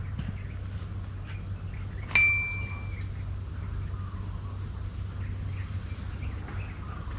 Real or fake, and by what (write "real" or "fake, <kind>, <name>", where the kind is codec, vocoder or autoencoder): real